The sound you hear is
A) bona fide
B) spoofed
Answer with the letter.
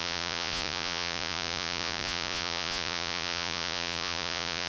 B